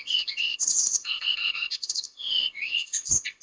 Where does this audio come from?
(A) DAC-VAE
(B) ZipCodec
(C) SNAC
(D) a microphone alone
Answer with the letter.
B